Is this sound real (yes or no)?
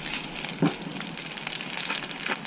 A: yes